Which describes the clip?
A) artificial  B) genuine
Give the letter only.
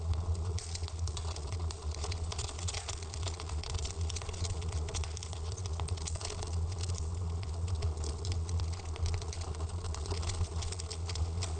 A